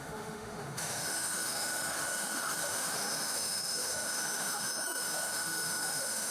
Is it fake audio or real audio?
fake